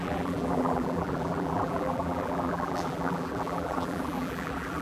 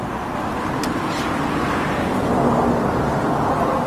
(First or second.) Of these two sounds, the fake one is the first